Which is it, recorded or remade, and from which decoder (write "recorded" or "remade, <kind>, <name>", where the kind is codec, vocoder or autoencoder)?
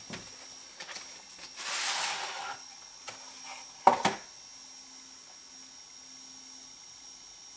recorded